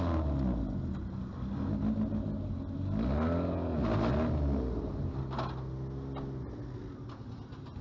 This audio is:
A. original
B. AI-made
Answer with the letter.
A